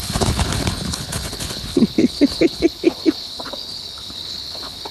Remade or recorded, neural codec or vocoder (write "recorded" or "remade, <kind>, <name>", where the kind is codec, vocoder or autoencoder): remade, codec, HILCodec